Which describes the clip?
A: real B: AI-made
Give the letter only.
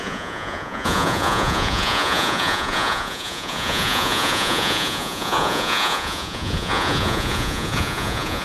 B